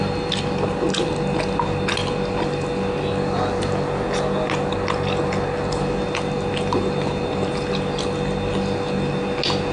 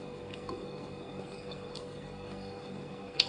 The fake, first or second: second